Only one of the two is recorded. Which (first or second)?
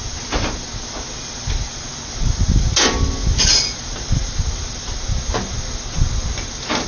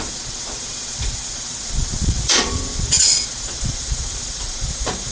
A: first